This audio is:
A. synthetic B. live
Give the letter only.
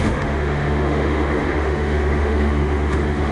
A